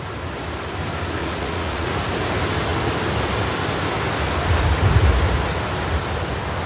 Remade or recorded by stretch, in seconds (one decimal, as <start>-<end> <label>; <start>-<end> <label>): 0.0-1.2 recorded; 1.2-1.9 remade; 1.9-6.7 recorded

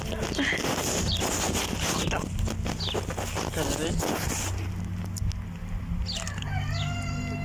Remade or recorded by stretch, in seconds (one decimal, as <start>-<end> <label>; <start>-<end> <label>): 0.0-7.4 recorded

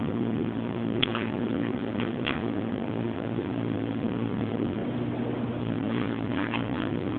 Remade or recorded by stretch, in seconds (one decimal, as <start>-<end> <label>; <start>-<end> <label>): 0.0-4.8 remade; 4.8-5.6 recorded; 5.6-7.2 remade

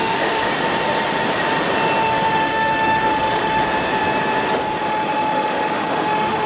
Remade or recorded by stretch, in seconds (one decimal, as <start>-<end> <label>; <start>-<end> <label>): 0.0-0.5 remade; 0.5-2.0 recorded; 2.0-3.6 remade; 3.6-4.8 recorded; 4.8-6.5 remade

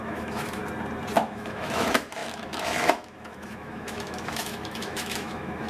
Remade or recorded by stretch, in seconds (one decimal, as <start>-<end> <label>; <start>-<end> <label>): 0.0-0.6 remade; 0.6-1.2 recorded; 1.2-5.7 remade

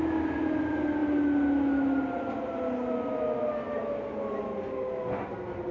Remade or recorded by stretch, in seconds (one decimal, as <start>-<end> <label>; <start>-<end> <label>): 0.0-5.7 recorded

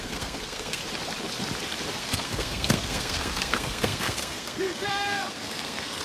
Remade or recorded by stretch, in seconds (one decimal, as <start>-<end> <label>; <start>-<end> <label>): 0.0-0.8 remade; 0.8-2.0 recorded; 2.0-6.0 remade